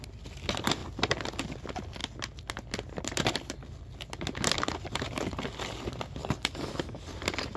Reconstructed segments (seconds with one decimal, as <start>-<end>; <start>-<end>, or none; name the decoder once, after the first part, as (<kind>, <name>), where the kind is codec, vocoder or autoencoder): 6.2-7.1 (codec, DAC)